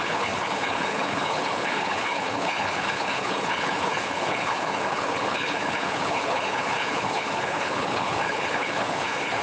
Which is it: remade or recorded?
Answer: remade